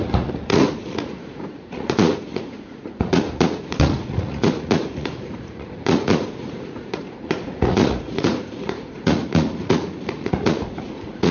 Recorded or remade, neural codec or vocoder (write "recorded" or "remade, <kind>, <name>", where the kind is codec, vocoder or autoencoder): remade, vocoder, Vocos